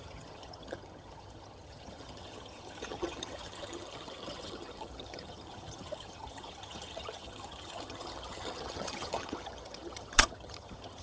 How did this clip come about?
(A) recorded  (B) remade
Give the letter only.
B